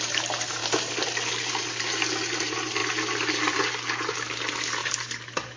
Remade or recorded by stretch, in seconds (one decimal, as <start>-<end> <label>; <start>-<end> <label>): 0.0-4.8 recorded; 4.8-5.6 remade